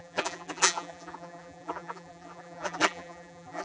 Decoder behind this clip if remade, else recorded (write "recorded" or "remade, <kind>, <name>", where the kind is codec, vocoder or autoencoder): remade, vocoder, BigVGAN v2